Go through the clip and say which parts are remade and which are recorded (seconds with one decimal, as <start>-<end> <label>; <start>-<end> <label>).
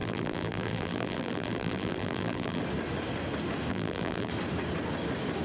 0.0-2.6 remade; 2.6-3.7 recorded; 3.7-4.3 remade; 4.3-5.4 recorded